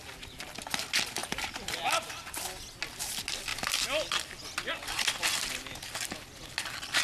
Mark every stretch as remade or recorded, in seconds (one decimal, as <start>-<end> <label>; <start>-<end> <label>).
0.0-1.2 recorded; 1.2-2.2 remade; 2.2-7.0 recorded